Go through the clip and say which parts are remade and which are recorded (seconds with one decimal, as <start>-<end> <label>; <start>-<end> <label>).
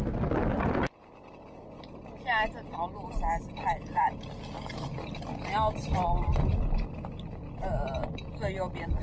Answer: 0.0-9.0 recorded